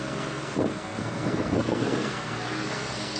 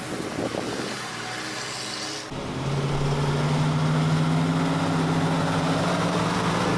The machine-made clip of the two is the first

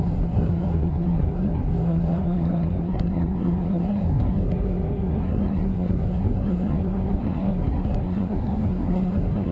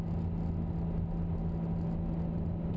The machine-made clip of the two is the first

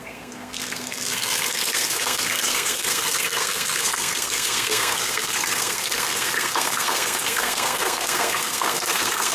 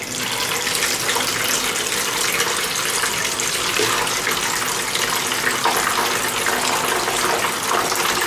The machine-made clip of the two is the first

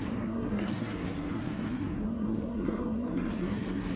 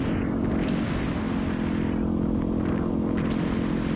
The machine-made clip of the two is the first